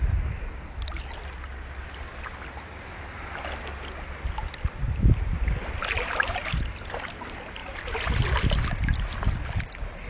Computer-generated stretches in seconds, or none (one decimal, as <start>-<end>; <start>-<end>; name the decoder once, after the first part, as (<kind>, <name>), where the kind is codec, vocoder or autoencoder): none